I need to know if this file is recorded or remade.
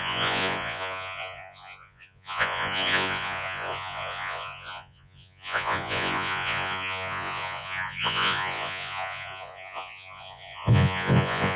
remade